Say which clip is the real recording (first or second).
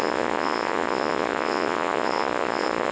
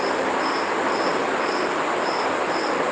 second